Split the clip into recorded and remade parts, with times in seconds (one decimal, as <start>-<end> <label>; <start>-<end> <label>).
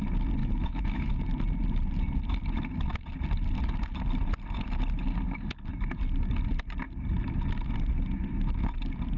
0.0-0.4 recorded; 0.4-1.1 remade; 1.1-9.2 recorded